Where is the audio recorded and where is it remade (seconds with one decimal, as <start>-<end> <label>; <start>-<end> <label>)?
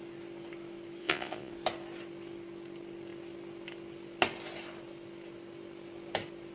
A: 0.0-1.0 recorded; 1.0-1.5 remade; 1.5-6.5 recorded